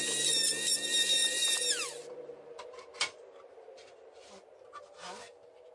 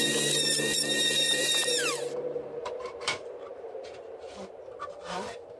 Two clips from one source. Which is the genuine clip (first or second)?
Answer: first